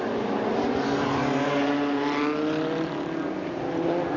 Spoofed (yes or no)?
no